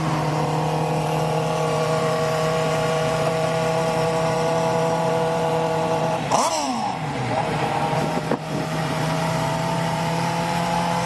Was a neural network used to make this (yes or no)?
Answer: yes